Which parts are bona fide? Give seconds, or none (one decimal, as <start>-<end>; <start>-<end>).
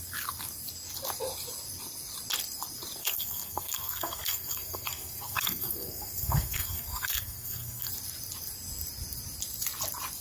0.0-3.0; 7.9-10.2